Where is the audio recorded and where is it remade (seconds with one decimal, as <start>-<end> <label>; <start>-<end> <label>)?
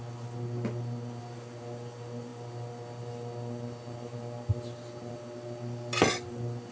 0.0-6.7 recorded